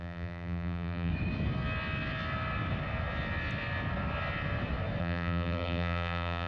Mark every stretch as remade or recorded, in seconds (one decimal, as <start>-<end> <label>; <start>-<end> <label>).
0.0-1.1 remade; 1.1-5.0 recorded; 5.0-6.5 remade